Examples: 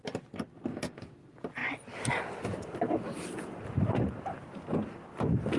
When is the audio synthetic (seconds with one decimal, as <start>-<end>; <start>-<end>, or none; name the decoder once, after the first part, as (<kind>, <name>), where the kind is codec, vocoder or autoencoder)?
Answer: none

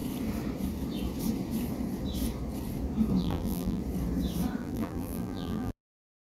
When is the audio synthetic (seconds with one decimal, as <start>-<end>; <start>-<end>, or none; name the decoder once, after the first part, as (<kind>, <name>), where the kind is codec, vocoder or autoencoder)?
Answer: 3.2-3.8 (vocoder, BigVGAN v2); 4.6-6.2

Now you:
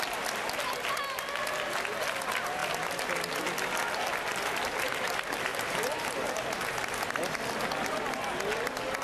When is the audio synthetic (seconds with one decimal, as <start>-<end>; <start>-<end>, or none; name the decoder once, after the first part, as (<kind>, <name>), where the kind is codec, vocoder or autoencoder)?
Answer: 5.5-6.3 (vocoder, BigVGAN v2)

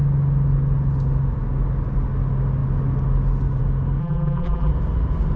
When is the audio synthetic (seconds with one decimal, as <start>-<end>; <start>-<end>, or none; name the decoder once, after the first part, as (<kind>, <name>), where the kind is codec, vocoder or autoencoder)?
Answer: 4.0-4.7 (vocoder, BigVGAN v2)